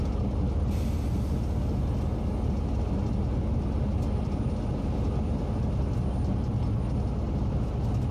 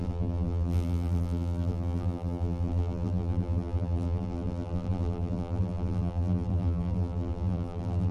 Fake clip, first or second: second